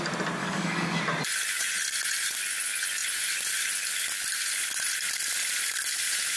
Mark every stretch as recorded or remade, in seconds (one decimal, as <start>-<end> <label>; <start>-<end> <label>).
0.0-0.4 recorded; 0.4-1.0 remade; 1.0-6.4 recorded